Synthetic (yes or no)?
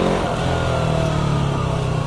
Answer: no